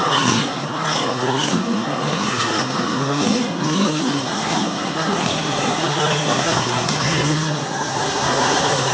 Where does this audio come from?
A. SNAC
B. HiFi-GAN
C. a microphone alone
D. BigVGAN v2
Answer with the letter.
A